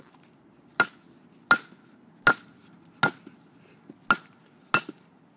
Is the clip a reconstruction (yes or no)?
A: no